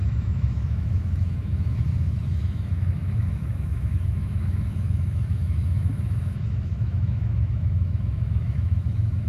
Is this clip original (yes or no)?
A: no